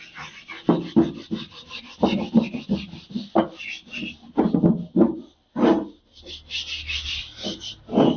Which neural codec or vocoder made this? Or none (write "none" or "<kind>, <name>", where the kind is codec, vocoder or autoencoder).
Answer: none